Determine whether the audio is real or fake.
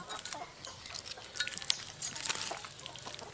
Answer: real